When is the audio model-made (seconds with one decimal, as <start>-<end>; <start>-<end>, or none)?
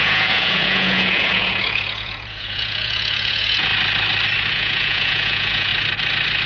0.0-3.7; 4.5-5.7